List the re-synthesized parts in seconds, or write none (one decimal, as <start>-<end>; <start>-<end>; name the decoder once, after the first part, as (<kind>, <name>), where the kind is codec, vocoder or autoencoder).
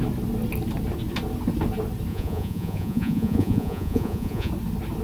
2.1-4.5 (vocoder, Vocos)